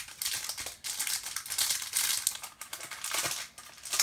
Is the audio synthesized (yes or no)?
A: no